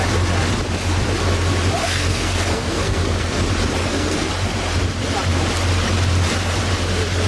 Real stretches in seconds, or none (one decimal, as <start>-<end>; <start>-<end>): 0.0-1.8; 3.4-3.8; 4.3-7.3

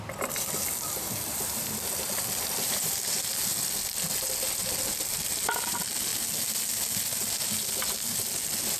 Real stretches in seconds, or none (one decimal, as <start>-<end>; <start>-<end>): 0.0-8.8

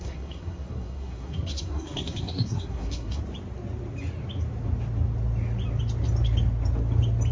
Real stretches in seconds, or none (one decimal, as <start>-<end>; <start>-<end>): 3.2-7.3